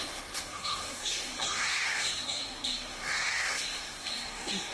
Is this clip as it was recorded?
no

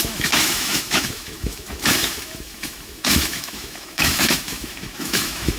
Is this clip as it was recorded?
no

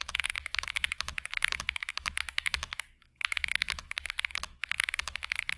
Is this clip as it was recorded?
no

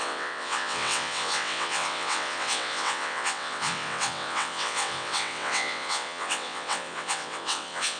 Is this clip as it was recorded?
no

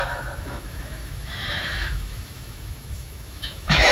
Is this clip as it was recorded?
no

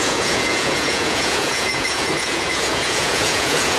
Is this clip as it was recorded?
no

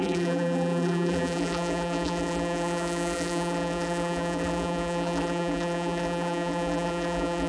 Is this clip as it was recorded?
no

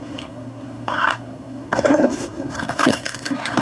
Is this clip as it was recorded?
no